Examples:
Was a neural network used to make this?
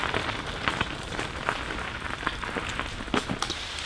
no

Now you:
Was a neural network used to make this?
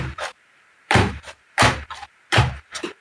yes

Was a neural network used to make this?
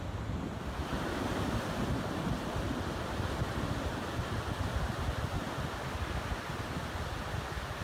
no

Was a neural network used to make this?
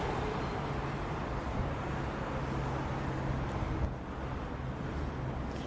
no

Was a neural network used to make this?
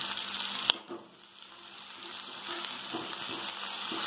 no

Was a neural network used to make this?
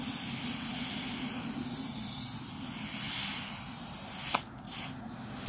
no